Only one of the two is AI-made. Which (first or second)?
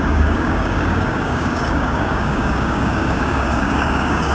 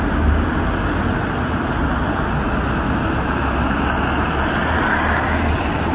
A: first